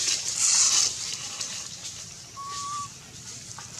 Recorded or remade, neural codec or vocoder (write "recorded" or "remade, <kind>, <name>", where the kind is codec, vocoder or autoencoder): recorded